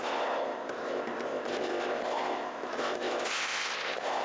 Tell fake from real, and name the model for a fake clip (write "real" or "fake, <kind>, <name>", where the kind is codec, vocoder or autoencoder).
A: fake, codec, ZipCodec